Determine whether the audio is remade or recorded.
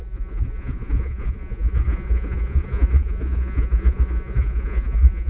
remade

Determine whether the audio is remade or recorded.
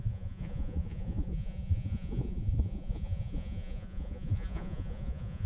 remade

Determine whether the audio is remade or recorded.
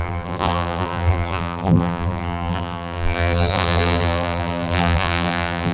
remade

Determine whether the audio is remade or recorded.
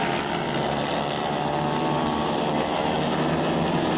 recorded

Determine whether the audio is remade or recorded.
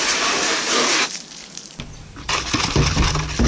recorded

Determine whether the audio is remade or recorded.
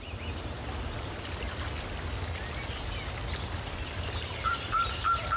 recorded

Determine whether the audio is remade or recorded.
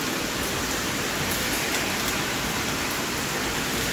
recorded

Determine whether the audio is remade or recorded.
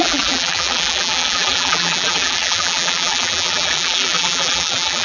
remade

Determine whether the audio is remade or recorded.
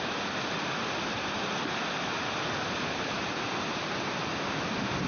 recorded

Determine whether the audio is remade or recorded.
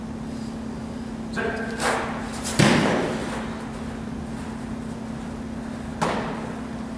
recorded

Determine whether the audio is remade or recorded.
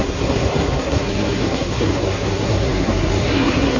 remade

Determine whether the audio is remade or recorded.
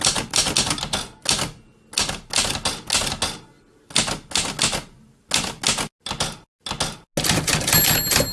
recorded